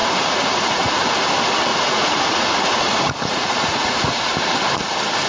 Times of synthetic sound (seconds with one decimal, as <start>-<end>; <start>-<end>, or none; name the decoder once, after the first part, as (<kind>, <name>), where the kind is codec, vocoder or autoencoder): 0.0-1.0 (vocoder, Vocos); 1.7-4.5